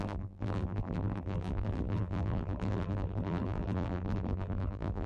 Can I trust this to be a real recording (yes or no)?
no